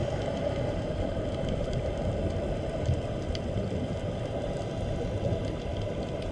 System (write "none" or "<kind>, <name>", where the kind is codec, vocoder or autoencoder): none